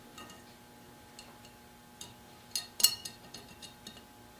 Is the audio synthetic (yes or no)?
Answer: no